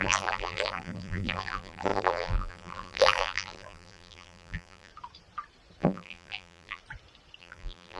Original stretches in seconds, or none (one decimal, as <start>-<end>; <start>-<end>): 4.9-5.8; 6.8-7.4